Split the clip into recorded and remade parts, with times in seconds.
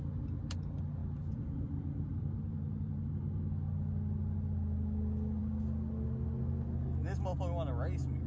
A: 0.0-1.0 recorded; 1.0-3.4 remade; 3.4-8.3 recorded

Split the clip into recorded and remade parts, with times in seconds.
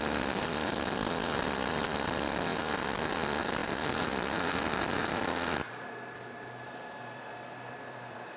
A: 0.0-2.5 remade; 2.5-3.1 recorded; 3.1-3.6 remade; 3.6-4.8 recorded; 4.8-8.4 remade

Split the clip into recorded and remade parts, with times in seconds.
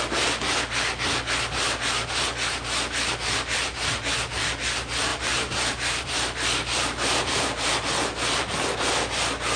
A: 0.0-5.1 recorded; 5.1-7.7 remade; 7.7-9.6 recorded